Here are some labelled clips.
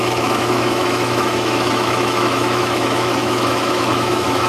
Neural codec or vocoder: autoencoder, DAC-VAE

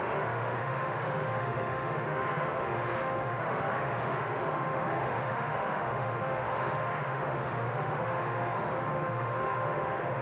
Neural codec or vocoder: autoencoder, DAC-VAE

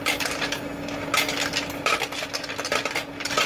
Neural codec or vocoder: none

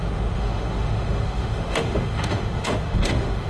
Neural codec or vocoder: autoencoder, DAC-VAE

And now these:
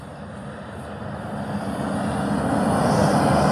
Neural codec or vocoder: none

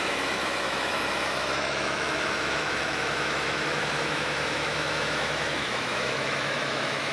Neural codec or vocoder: autoencoder, DAC-VAE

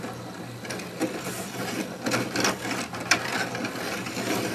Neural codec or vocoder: none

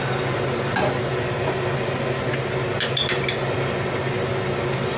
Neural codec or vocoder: none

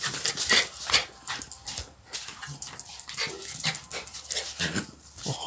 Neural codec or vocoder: none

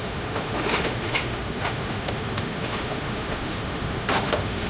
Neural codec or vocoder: autoencoder, DAC-VAE